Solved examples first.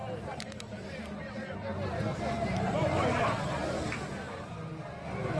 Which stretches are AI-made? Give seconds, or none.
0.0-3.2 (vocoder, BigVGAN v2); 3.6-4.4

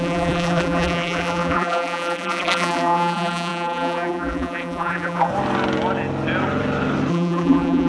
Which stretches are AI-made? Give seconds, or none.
0.0-5.3 (vocoder, BigVGAN v2); 7.1-7.9